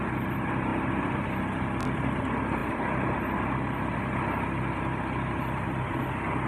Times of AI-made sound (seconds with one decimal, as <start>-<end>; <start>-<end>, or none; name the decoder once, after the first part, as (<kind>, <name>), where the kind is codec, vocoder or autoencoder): none